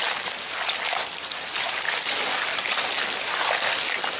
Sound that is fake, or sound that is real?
real